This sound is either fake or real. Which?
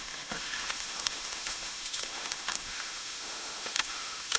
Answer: fake